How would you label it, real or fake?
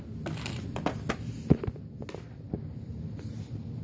real